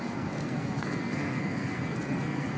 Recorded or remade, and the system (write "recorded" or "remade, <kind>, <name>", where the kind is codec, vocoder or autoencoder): remade, codec, SNAC